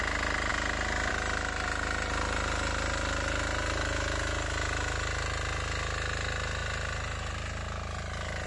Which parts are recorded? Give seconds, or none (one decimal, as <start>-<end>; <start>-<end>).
0.0-8.5